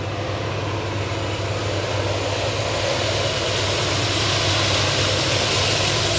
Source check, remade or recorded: recorded